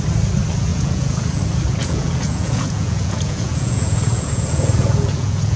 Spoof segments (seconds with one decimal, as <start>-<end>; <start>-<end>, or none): 0.7-1.4; 1.8-5.6